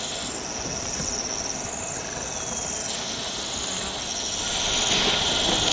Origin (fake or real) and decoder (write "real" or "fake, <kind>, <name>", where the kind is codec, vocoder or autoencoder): real